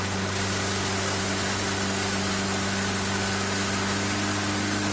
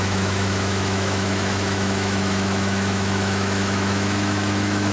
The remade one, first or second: second